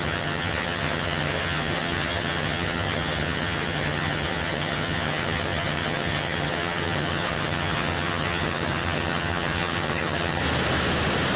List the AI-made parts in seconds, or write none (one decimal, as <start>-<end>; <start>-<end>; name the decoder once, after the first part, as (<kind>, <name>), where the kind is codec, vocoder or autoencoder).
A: 0.0-10.4 (vocoder, HiFi-GAN)